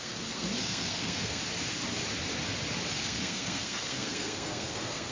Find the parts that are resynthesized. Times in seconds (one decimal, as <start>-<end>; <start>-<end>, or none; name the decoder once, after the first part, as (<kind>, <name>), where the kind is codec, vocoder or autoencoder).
0.0-1.4 (codec, SNAC); 2.9-5.1